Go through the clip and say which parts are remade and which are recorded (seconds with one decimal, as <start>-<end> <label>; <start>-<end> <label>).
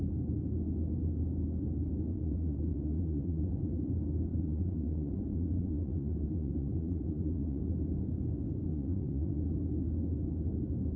0.0-2.1 recorded; 2.1-3.8 remade; 3.8-4.3 recorded; 4.3-7.6 remade; 7.6-8.7 recorded; 8.7-9.4 remade; 9.4-11.0 recorded